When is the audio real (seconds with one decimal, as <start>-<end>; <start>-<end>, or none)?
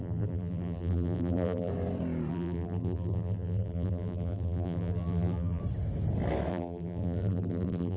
1.7-2.3; 5.6-6.5